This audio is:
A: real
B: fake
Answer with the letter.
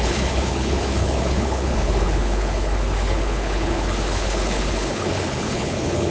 B